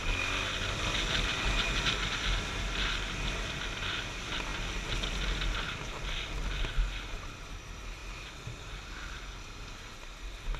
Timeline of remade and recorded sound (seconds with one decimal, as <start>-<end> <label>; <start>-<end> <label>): 0.0-10.6 recorded